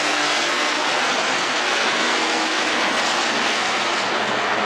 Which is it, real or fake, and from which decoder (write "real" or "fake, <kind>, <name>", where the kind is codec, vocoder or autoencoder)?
fake, codec, SNAC